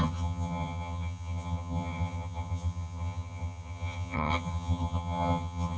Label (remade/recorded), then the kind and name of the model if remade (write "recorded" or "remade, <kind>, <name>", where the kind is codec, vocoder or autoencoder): remade, vocoder, HiFi-GAN